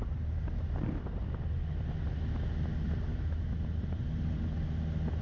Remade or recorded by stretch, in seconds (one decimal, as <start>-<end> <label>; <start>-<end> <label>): 0.0-3.1 recorded; 3.1-3.6 remade; 3.6-5.2 recorded